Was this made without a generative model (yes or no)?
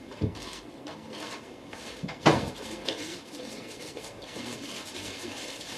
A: no